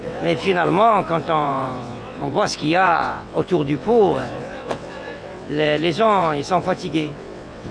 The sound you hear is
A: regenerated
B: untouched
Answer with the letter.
A